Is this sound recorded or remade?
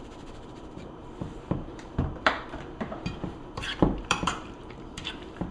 remade